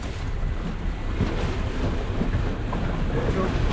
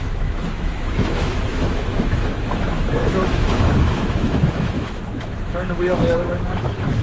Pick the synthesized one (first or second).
second